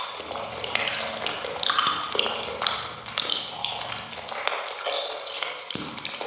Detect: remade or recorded recorded